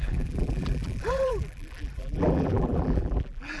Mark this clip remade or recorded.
remade